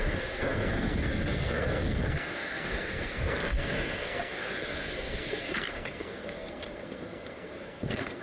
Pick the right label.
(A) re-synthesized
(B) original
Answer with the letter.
A